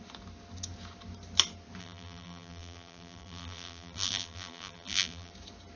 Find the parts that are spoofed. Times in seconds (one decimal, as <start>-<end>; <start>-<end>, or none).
1.8-5.3